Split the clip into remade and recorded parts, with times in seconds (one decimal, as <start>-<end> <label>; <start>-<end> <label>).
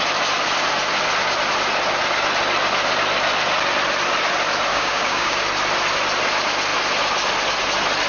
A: 0.0-4.7 recorded; 4.7-5.4 remade; 5.4-8.1 recorded